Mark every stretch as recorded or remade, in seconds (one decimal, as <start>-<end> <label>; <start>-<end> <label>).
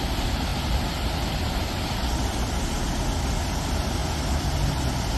0.0-5.2 recorded